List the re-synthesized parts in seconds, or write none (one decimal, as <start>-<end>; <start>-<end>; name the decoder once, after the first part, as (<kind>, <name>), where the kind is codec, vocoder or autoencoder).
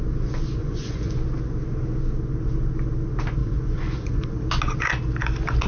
0.6-1.2 (vocoder, Vocos); 3.4-4.4